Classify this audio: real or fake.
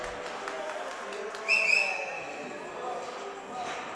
real